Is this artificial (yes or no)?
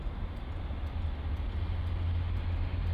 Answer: no